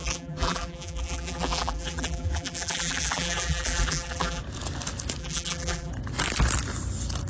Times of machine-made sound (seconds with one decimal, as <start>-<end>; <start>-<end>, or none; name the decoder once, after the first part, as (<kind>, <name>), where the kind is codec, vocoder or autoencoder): 0.0-4.4 (vocoder, BigVGAN v2); 5.2-5.9